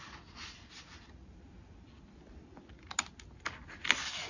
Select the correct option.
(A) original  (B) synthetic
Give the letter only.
A